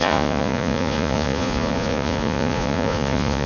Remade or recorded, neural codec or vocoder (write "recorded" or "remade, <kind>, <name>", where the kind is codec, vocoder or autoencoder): remade, vocoder, Vocos